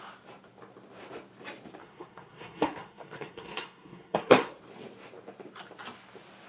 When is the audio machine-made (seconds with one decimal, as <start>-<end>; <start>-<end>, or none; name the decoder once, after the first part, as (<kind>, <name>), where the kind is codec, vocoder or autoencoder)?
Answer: 1.8-4.5 (codec, SNAC)